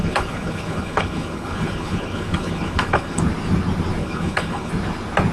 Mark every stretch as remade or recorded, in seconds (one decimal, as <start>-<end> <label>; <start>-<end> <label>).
0.0-3.2 remade; 3.2-4.0 recorded; 4.0-4.7 remade; 4.7-5.3 recorded